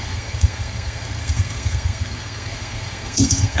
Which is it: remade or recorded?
remade